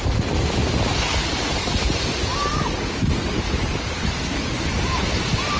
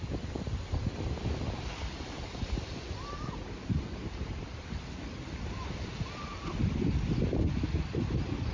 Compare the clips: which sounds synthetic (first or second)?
second